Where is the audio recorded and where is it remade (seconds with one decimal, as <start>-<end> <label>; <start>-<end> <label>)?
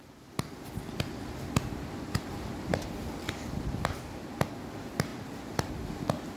0.0-6.4 recorded